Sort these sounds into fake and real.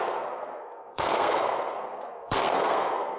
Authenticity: fake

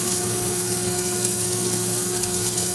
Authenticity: fake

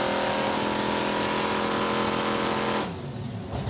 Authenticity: real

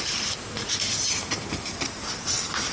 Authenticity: real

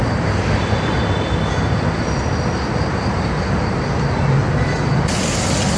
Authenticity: real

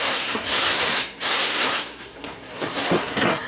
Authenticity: fake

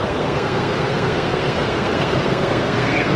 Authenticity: fake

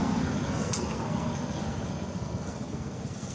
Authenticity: fake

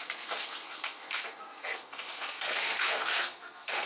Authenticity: fake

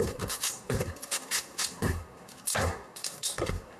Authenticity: fake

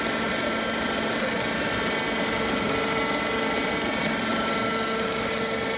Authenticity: real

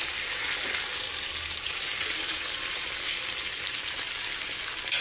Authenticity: real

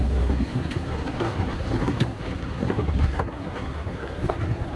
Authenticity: fake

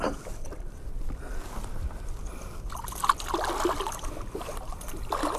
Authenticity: real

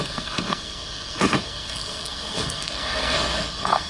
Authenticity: fake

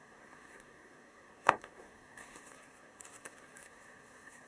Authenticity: fake